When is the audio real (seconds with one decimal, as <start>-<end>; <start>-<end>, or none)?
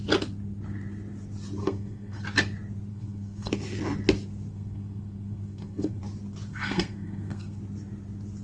0.0-1.6; 2.2-2.9; 3.5-4.5; 6.0-6.5; 7.6-8.4